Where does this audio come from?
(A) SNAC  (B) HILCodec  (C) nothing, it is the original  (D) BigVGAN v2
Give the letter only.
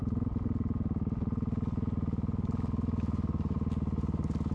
C